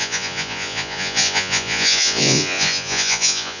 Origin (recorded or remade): remade